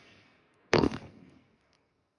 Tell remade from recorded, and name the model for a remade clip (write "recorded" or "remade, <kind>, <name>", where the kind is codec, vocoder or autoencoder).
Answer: remade, codec, SNAC